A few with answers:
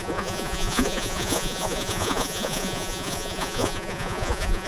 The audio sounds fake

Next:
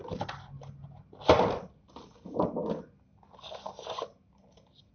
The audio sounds real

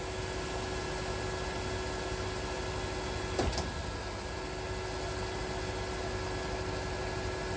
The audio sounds real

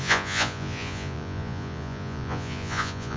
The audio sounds fake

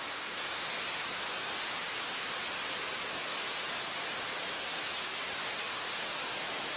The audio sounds real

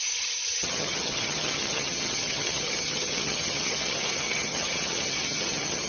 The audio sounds fake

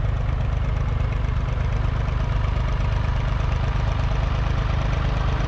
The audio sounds real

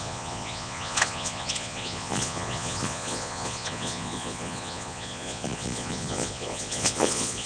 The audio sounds fake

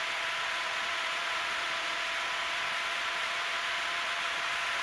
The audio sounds fake